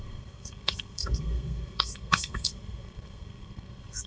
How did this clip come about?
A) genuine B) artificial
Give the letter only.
B